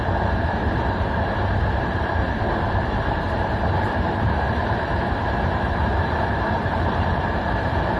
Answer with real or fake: fake